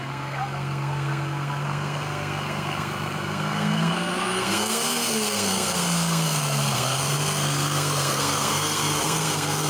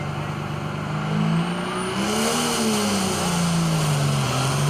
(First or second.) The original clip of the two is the second